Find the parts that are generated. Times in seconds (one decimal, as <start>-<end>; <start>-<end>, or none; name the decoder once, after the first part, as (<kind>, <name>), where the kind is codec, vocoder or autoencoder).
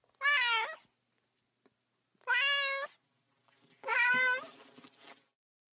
none